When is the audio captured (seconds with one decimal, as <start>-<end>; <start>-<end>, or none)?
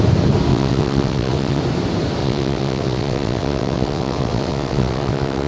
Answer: 0.0-0.5; 1.6-2.2